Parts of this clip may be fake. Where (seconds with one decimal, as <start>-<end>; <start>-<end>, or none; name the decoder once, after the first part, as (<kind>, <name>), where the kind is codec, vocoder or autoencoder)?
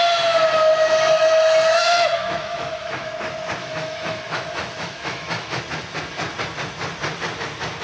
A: 1.7-3.1 (autoencoder, DAC-VAE); 3.6-5.6